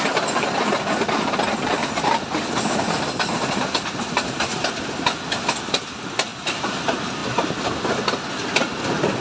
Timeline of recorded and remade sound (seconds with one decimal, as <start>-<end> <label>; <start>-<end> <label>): 0.0-1.8 recorded; 1.8-4.7 remade; 4.7-6.3 recorded; 6.3-6.8 remade; 6.8-9.2 recorded